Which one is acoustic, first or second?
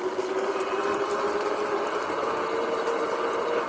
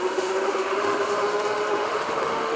first